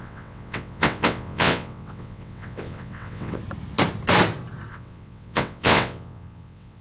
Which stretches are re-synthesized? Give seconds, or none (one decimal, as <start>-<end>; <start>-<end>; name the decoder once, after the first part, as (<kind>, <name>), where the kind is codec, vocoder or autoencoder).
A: 0.0-3.4 (vocoder, WaveNeXt); 4.7-6.8